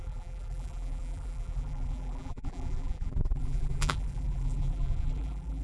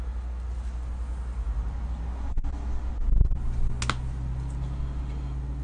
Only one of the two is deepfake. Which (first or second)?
first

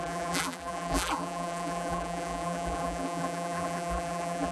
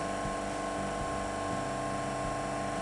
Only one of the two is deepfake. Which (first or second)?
first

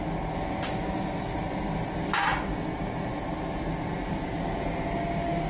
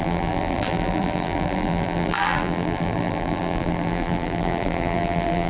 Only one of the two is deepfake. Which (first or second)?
second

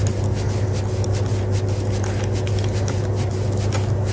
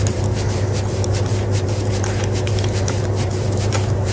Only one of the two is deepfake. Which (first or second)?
second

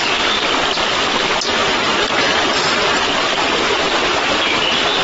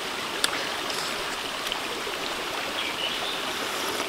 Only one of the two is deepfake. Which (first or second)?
second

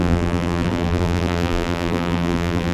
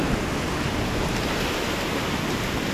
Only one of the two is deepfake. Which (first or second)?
first